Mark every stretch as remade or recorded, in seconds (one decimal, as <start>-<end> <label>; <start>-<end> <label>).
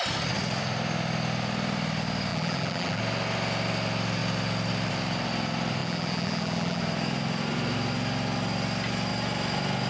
0.0-2.3 recorded; 2.3-3.0 remade; 3.0-5.8 recorded; 5.8-6.8 remade; 6.8-9.9 recorded